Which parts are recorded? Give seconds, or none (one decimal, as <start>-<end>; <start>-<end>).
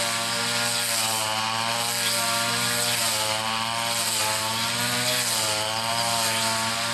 0.0-6.9